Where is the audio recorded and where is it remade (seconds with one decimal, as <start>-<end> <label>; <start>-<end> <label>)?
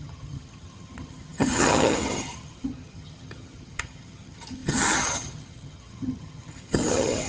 0.0-7.3 remade